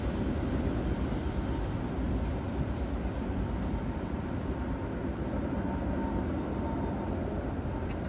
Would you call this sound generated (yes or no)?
no